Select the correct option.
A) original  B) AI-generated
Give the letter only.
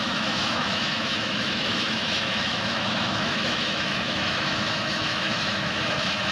B